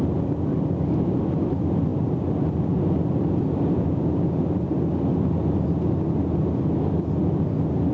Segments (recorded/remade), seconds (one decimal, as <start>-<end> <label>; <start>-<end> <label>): 0.0-7.9 recorded